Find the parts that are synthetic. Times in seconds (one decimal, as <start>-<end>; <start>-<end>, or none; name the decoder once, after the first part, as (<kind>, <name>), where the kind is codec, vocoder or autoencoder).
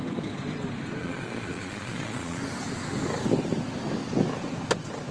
1.0-2.4 (vocoder, Vocos)